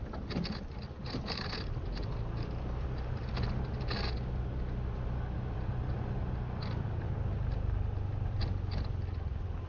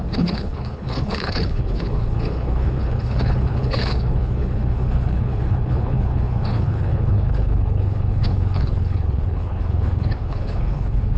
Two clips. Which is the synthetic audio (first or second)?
second